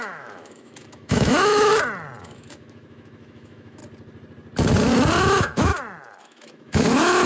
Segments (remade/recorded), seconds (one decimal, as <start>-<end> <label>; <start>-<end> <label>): 0.0-1.7 remade; 1.7-2.2 recorded; 2.2-3.8 remade; 3.8-5.2 recorded; 5.2-5.7 remade; 5.7-6.2 recorded; 6.2-7.3 remade